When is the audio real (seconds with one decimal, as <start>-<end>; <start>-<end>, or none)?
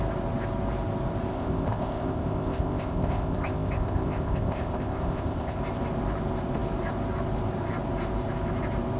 0.0-1.3; 5.6-9.0